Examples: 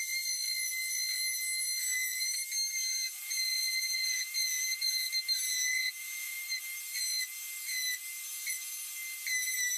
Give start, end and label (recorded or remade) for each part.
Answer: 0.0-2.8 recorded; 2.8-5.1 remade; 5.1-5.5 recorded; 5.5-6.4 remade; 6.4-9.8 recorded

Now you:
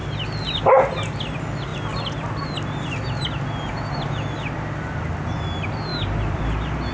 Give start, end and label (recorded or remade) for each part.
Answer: 0.0-0.6 remade; 0.6-5.9 recorded; 5.9-6.9 remade

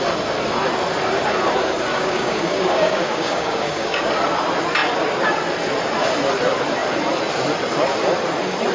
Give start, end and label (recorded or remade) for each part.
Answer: 0.0-1.9 recorded; 1.9-4.1 remade; 4.1-8.7 recorded

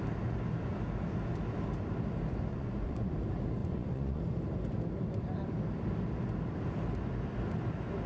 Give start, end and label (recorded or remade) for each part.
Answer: 0.0-2.5 recorded; 2.5-3.1 remade; 3.1-3.6 recorded; 3.6-4.2 remade; 4.2-8.1 recorded

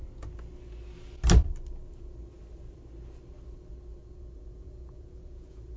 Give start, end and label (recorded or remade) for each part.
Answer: 0.0-4.0 recorded; 4.0-5.8 remade